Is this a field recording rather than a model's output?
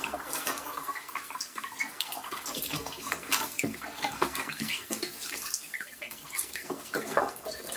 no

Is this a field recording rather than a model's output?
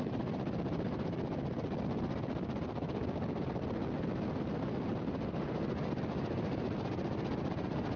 yes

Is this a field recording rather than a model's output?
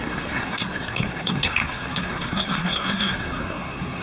no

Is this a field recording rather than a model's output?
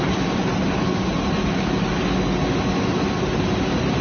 yes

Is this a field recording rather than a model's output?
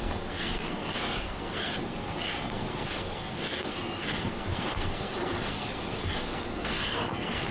no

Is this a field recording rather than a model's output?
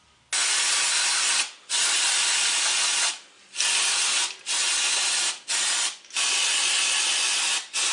yes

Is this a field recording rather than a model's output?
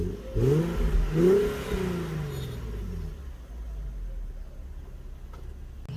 yes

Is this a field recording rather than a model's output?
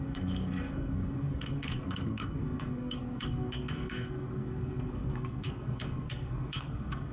no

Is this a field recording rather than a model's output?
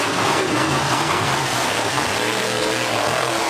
no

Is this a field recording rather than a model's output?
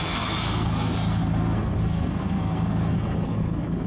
no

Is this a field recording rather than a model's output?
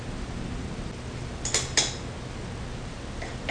yes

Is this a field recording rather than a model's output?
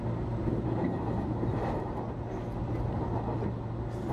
yes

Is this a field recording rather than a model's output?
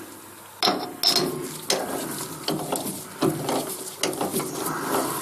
yes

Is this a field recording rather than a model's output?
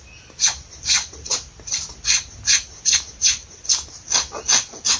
yes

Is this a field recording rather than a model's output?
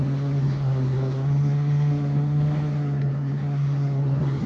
no